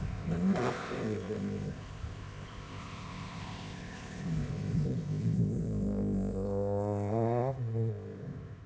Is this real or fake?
fake